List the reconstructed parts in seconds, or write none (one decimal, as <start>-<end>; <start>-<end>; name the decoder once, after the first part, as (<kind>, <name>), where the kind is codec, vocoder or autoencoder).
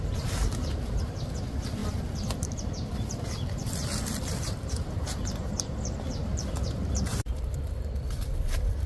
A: 0.0-1.8 (vocoder, BigVGAN v2); 2.4-7.1; 8.2-8.9